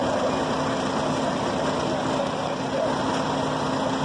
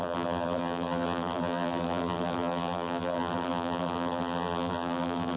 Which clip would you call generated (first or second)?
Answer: second